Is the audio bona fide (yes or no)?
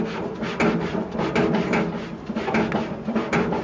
yes